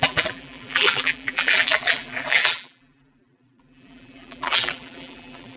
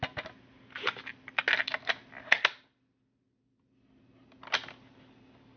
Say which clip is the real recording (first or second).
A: second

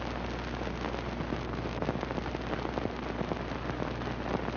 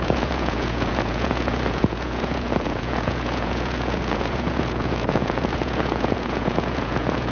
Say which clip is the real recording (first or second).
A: first